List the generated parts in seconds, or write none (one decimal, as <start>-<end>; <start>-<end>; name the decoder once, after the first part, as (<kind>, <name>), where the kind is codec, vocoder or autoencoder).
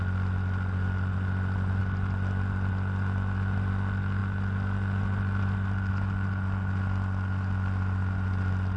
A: none